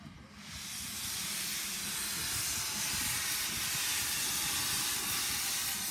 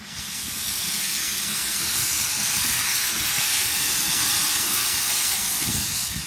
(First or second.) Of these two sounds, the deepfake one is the second